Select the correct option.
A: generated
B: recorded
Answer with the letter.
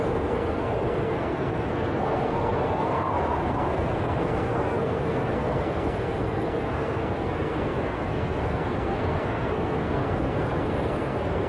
A